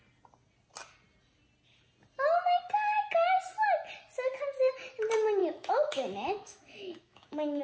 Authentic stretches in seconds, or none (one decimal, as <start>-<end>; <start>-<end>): 0.0-5.4